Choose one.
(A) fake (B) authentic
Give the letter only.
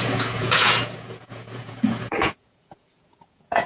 A